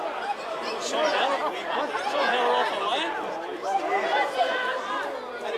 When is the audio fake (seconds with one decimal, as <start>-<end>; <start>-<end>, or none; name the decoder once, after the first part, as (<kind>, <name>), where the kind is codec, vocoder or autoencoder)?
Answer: none